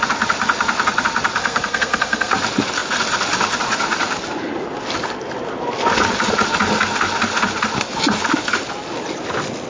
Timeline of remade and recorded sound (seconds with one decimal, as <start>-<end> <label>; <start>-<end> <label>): 0.0-1.4 recorded; 1.4-2.3 remade; 2.3-9.7 recorded